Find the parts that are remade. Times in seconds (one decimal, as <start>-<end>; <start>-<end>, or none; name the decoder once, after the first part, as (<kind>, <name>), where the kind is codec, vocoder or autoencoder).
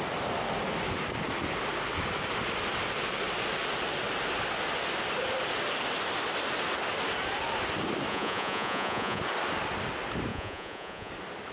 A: 8.1-9.2 (vocoder, Vocos); 10.3-11.1